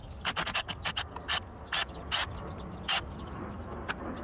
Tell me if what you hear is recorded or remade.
recorded